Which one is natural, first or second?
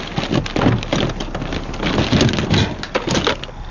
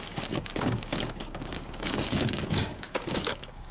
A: first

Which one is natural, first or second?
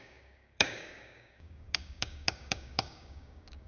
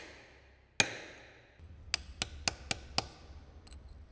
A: second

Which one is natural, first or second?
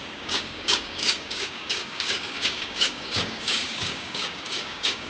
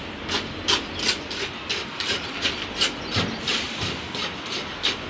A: second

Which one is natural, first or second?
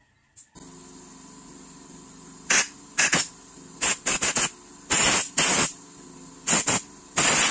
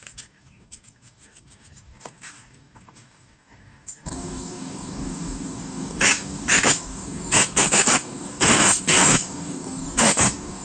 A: first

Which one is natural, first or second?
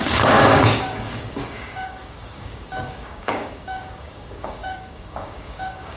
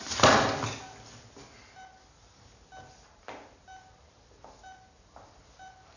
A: second